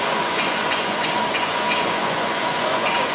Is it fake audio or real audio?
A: fake